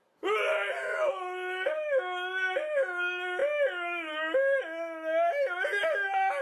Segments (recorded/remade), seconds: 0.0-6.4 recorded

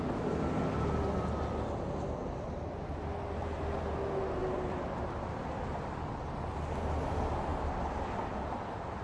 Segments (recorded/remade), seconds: 0.0-2.2 recorded; 2.2-3.2 remade; 3.2-4.4 recorded; 4.4-6.1 remade; 6.1-9.0 recorded

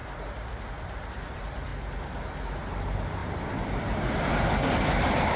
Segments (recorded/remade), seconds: 0.0-1.7 remade; 1.7-2.5 recorded; 2.5-5.4 remade

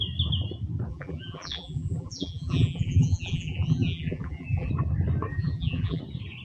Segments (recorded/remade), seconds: 0.0-0.9 recorded; 0.9-4.7 remade; 4.7-5.3 recorded; 5.3-6.0 remade; 6.0-6.4 recorded

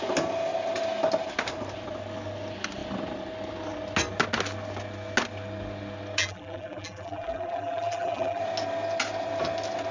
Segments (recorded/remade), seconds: 0.0-6.2 recorded; 6.2-8.4 remade; 8.4-9.9 recorded

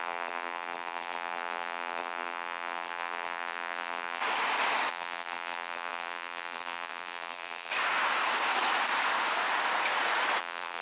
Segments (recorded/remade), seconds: 0.0-4.2 remade; 4.2-4.9 recorded; 4.9-7.7 remade; 7.7-10.4 recorded; 10.4-10.8 remade